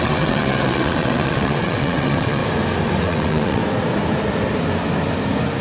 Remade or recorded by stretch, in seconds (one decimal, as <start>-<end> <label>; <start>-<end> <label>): 0.0-2.4 remade; 2.4-3.0 recorded; 3.0-3.6 remade; 3.6-5.6 recorded